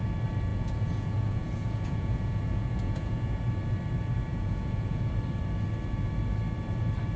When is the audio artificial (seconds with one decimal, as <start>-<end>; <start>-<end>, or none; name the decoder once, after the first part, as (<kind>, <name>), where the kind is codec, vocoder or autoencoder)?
0.5-3.4 (vocoder, Vocos); 4.3-5.1